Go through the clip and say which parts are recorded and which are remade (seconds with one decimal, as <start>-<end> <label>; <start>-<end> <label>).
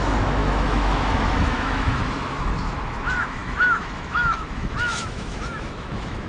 0.0-6.3 remade